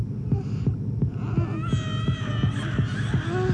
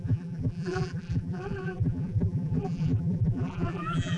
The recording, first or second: first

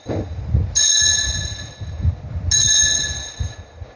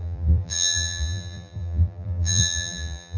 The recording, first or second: first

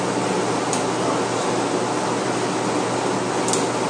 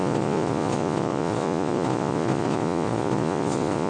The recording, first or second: first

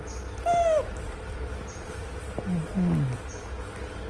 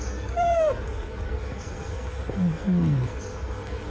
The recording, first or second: first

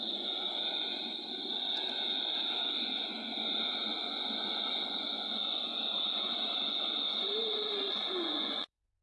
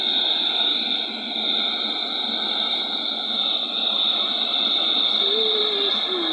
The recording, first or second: second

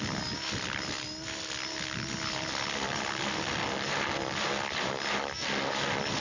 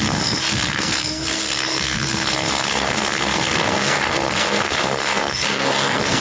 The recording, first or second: first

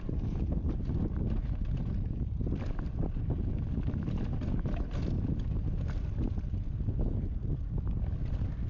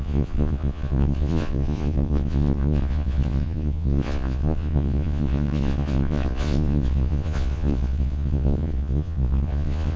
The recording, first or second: first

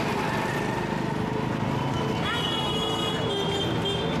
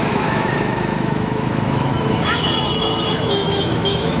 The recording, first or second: first